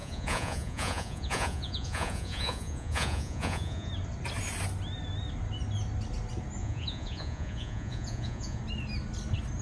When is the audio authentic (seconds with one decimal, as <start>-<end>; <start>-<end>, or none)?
3.9-6.6; 8.6-9.6

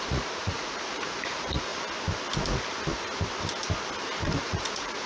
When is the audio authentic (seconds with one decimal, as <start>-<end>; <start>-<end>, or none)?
1.7-4.4

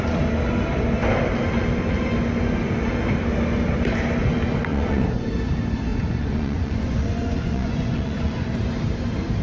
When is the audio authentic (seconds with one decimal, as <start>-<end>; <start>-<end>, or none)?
0.0-4.7; 5.3-5.9; 8.5-9.4

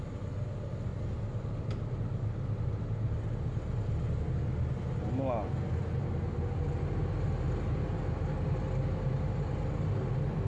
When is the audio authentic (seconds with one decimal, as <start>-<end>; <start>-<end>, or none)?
0.0-10.5

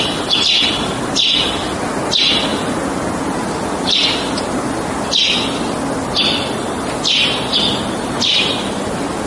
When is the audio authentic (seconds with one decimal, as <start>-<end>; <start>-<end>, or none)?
0.0-9.3

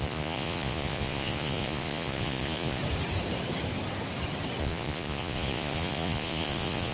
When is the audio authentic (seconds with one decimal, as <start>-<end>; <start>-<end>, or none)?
2.8-4.6

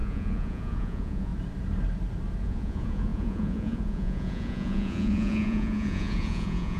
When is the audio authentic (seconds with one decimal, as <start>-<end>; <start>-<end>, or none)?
1.3-2.4